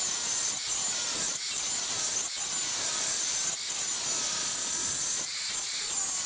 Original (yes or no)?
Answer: yes